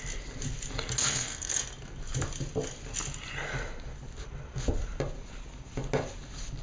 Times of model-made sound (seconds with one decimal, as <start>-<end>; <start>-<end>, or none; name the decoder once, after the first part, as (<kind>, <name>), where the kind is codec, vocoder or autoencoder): 1.0-1.6 (codec, SNAC)